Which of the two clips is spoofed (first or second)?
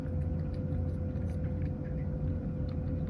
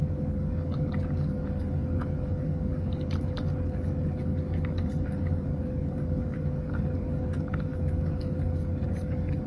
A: second